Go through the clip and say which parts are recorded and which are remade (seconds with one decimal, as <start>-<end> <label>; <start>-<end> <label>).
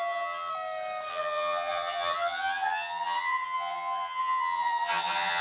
0.0-0.5 remade; 0.5-1.1 recorded; 1.1-5.4 remade